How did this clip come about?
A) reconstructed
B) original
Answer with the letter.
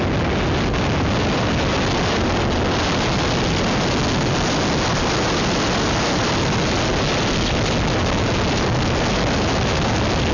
B